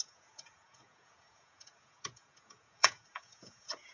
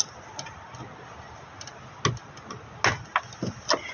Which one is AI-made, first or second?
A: first